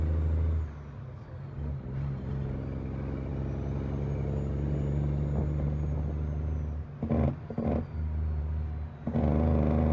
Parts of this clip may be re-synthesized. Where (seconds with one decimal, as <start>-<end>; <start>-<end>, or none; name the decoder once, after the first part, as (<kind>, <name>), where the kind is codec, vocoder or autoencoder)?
none